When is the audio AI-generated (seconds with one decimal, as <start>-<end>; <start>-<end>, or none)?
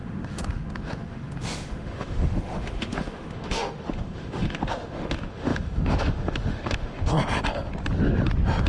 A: 0.0-7.1